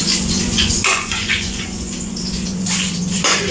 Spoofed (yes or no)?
yes